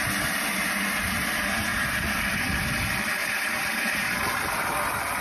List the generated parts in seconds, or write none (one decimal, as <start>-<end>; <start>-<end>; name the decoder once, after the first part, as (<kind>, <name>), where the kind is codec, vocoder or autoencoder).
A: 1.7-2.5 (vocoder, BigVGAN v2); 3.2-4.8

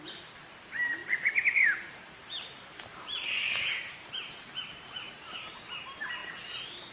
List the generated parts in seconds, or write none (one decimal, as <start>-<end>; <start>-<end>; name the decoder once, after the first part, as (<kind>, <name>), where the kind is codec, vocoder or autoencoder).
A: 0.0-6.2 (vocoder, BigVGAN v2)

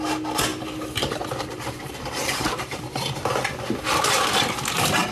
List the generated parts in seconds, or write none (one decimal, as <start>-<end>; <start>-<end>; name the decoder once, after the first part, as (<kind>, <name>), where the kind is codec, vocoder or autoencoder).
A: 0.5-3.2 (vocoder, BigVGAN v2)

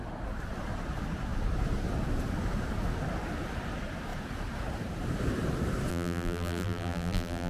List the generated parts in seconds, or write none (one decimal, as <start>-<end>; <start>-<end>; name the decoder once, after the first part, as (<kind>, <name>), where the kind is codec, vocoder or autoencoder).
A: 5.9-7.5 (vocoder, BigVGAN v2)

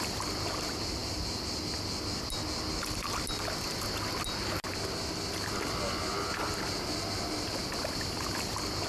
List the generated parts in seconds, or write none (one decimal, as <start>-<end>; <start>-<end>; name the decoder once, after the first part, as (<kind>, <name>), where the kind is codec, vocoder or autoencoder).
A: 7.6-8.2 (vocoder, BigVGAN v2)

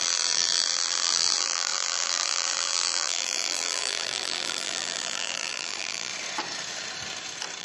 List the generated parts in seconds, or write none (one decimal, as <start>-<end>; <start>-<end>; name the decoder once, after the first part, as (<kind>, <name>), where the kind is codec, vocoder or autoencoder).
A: 0.0-6.1 (vocoder, BigVGAN v2)

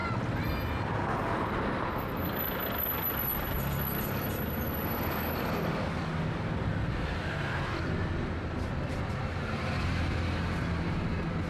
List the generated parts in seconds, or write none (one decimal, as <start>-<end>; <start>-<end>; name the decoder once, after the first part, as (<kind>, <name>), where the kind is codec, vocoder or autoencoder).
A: none